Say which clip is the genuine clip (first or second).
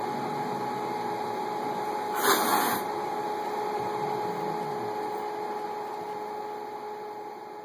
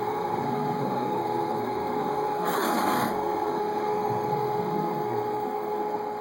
first